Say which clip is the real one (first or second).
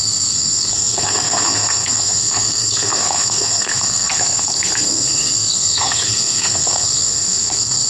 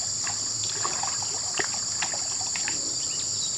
second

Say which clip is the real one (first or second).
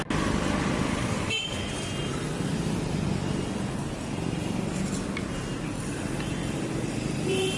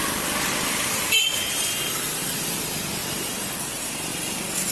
first